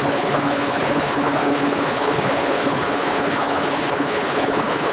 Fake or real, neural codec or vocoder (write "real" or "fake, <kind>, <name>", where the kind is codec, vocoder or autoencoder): fake, codec, HILCodec